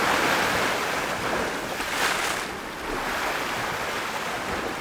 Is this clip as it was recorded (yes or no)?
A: yes